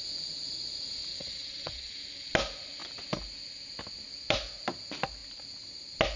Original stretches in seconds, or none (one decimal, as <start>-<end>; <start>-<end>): 0.0-1.1; 1.9-6.2